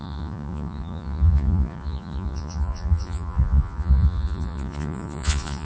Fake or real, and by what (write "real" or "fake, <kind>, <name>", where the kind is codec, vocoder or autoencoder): fake, vocoder, Vocos